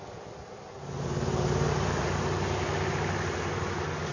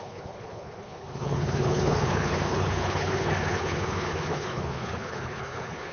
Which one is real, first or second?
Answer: first